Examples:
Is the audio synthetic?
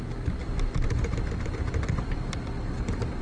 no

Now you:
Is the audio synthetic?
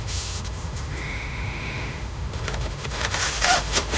yes